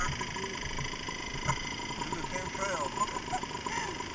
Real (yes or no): yes